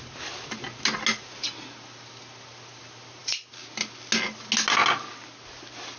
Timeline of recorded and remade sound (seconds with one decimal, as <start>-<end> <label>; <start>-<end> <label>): 0.0-6.0 recorded